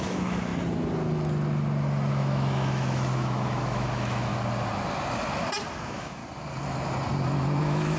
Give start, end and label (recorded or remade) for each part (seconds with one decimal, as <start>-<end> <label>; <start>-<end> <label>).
0.0-0.5 remade; 0.5-2.1 recorded; 2.1-4.3 remade; 4.3-5.8 recorded; 5.8-6.2 remade; 6.2-7.6 recorded; 7.6-8.0 remade